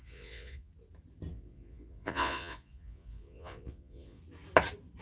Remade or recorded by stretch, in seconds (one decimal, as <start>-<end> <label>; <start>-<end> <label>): 0.0-0.7 remade; 0.7-1.3 recorded; 1.3-4.2 remade; 4.2-5.0 recorded